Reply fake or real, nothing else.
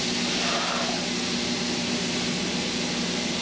real